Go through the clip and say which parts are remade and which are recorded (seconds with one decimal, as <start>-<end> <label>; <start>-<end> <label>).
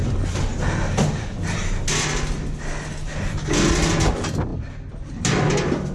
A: 0.0-5.9 recorded